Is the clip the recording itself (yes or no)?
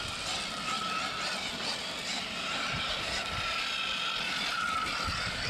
yes